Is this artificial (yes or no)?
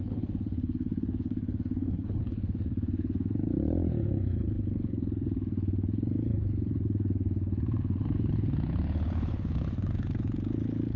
yes